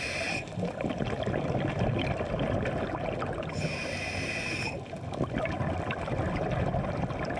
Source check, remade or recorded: recorded